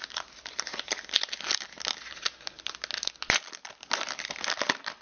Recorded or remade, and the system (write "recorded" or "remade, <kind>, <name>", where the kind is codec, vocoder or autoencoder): recorded